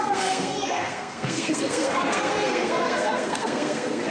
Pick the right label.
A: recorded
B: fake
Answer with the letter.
B